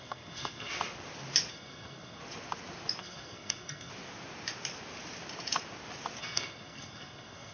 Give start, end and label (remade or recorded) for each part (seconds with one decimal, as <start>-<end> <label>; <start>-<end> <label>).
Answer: 0.0-0.7 remade; 0.7-1.5 recorded; 1.5-2.2 remade; 2.2-3.0 recorded; 3.0-3.9 remade; 3.9-6.2 recorded; 6.2-7.5 remade